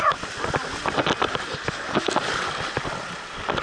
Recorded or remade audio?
recorded